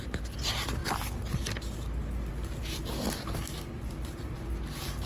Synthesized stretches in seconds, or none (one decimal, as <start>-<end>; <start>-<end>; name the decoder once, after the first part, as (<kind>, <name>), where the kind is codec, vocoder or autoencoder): none